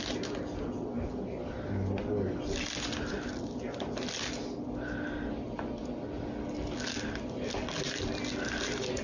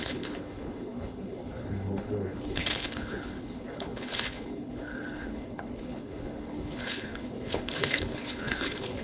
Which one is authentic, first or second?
first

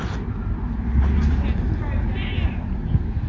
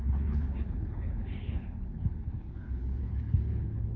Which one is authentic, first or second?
first